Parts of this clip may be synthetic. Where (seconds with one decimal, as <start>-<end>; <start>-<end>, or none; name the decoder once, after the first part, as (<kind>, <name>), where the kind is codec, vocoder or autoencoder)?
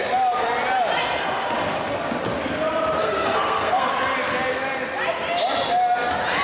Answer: 3.0-3.9 (codec, SNAC)